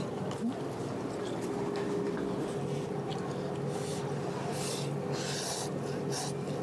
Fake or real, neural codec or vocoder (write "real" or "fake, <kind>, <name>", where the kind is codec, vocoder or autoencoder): real